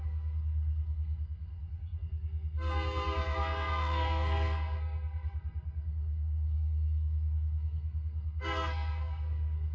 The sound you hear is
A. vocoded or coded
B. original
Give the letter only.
A